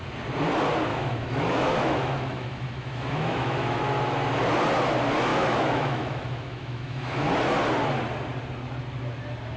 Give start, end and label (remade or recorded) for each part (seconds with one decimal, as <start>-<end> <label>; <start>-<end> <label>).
0.0-0.9 recorded; 0.9-3.8 remade; 3.8-5.3 recorded; 5.3-7.3 remade; 7.3-9.6 recorded